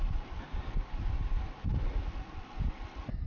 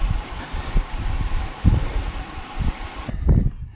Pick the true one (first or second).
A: first